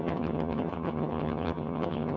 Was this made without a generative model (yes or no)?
no